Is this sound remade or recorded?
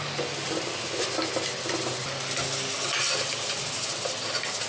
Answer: recorded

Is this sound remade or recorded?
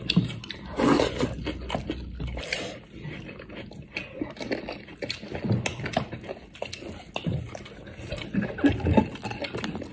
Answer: recorded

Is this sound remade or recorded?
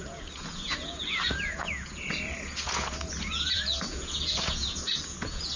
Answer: remade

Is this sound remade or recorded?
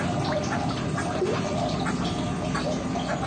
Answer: recorded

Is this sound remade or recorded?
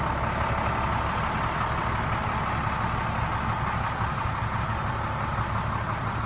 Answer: recorded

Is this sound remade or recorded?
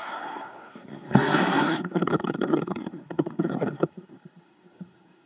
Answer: remade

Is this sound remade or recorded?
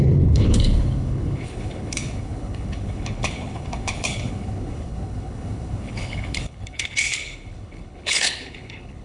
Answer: remade